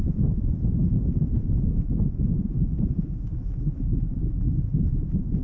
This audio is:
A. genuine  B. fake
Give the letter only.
B